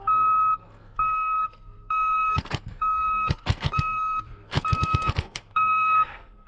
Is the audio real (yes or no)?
no